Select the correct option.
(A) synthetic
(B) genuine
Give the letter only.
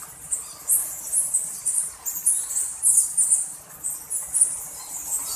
B